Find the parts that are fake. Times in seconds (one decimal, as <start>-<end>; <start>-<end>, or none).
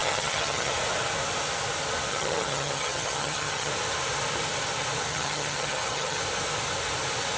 0.0-0.7; 2.1-3.7; 5.1-6.2